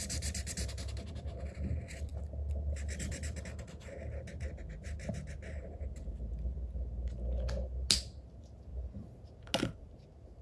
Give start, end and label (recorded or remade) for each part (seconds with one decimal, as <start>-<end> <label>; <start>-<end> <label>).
0.0-10.4 recorded